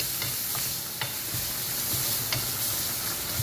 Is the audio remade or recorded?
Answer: recorded